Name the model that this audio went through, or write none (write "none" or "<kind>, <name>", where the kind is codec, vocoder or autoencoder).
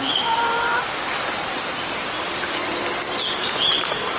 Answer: none